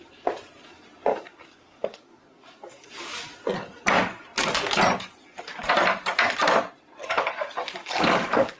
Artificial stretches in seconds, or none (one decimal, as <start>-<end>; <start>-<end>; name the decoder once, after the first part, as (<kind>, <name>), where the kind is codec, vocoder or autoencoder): 1.1-2.9 (codec, DAC); 7.0-8.6